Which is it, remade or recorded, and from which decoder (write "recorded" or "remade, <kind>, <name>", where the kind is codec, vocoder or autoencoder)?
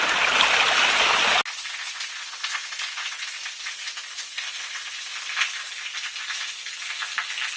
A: recorded